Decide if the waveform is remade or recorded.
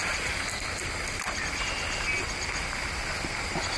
recorded